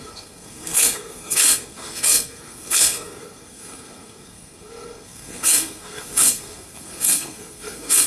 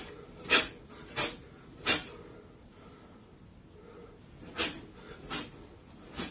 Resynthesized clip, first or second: first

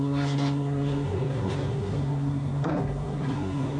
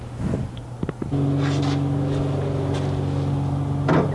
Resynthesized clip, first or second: first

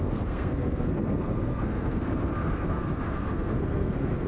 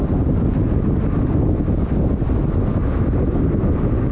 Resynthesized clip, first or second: first